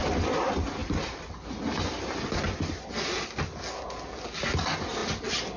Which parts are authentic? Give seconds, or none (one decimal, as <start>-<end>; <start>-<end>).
0.0-5.6